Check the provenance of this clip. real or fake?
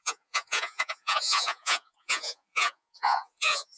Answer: fake